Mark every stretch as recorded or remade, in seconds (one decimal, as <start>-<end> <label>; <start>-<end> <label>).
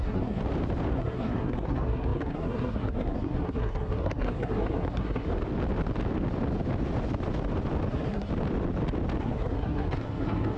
0.0-0.4 remade; 0.4-0.9 recorded; 0.9-5.3 remade; 5.3-7.9 recorded; 7.9-8.3 remade; 8.3-9.2 recorded; 9.2-10.6 remade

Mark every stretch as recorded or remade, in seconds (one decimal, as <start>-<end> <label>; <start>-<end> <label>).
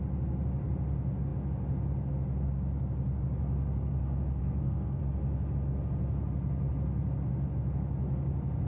0.0-4.4 recorded; 4.4-5.0 remade; 5.0-8.7 recorded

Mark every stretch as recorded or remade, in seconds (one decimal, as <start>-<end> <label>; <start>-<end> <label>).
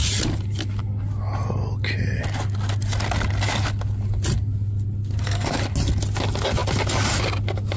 0.0-5.0 recorded; 5.0-5.6 remade; 5.6-7.8 recorded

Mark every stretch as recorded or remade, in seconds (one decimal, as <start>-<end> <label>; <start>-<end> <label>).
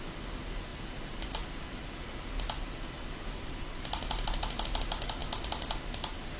0.0-6.4 recorded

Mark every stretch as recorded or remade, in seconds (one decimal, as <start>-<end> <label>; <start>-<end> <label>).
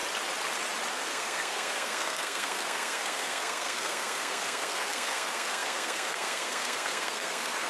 0.0-0.9 recorded; 0.9-7.7 remade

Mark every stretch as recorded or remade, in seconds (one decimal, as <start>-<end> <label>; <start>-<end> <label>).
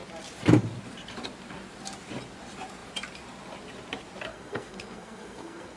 0.0-4.3 recorded; 4.3-5.8 remade